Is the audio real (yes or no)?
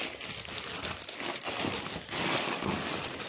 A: yes